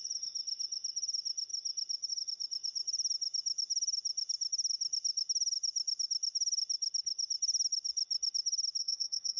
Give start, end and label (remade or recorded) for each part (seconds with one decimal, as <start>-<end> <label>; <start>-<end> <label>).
0.0-8.8 recorded; 8.8-9.4 remade